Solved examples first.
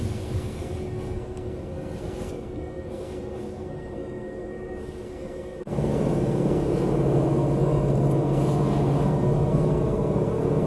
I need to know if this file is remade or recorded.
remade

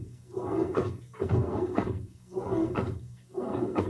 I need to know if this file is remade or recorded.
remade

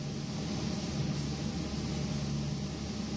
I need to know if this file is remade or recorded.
recorded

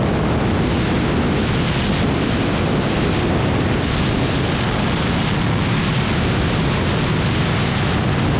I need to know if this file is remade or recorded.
recorded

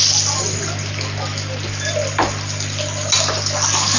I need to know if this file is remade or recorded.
recorded